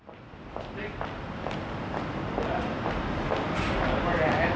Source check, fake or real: real